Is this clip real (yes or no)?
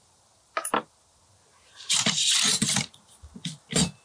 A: no